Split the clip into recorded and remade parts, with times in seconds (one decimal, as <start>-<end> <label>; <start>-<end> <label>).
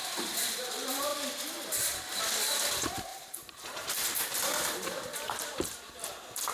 0.0-0.6 remade; 0.6-3.1 recorded; 3.1-5.8 remade; 5.8-6.5 recorded